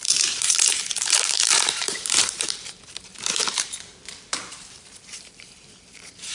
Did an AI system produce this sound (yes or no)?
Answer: yes